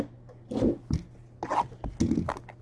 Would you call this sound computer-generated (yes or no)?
no